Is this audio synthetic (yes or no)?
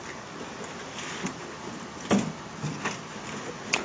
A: no